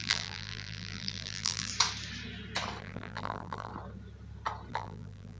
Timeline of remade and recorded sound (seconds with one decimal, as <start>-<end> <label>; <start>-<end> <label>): 0.0-1.7 remade; 1.7-2.8 recorded; 2.8-3.7 remade; 3.7-4.7 recorded; 4.7-5.4 remade

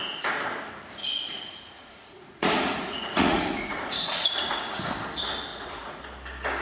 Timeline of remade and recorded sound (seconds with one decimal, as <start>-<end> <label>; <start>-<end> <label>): 0.0-1.0 recorded; 1.0-4.9 remade; 4.9-5.5 recorded; 5.5-6.0 remade; 6.0-6.6 recorded

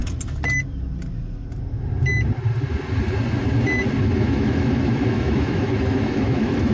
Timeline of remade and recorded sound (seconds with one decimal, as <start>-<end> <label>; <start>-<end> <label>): 0.0-4.0 recorded; 4.0-6.7 remade

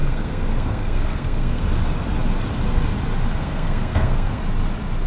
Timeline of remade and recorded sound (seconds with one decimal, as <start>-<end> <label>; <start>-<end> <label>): 0.0-1.6 remade; 1.6-3.4 recorded; 3.4-4.4 remade; 4.4-5.1 recorded

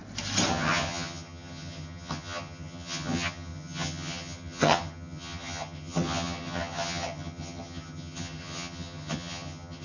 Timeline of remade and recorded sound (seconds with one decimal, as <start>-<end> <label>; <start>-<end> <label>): 0.0-0.5 recorded; 0.5-9.8 remade

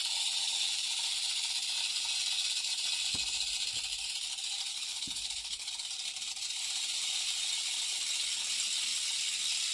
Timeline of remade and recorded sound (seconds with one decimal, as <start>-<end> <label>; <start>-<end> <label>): 0.0-4.7 recorded; 4.7-5.7 remade; 5.7-9.7 recorded

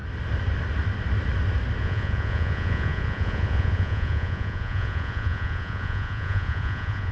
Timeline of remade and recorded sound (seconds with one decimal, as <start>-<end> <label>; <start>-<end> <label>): 0.0-1.8 recorded; 1.8-7.1 remade

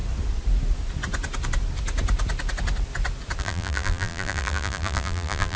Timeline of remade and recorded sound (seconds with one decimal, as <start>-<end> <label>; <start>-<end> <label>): 0.0-3.4 recorded; 3.4-5.6 remade